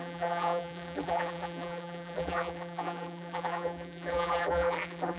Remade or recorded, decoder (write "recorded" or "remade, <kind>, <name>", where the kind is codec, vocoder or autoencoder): remade, vocoder, BigVGAN v2